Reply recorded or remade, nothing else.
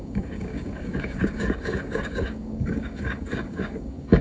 remade